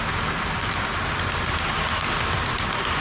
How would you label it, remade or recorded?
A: recorded